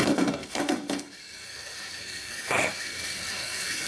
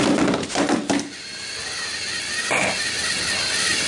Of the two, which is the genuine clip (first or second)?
second